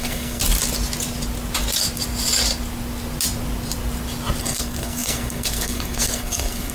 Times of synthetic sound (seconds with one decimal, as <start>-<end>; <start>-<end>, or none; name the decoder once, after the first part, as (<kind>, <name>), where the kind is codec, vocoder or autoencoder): 0.0-0.4 (codec, SNAC); 4.4-6.7